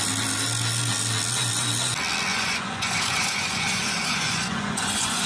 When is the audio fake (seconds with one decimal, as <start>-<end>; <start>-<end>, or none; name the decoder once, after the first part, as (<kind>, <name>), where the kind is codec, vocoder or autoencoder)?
2.3-5.3 (vocoder, Vocos)